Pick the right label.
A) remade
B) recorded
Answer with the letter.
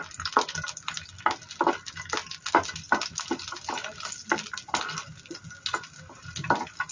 B